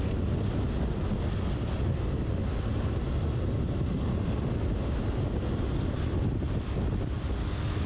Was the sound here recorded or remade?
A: recorded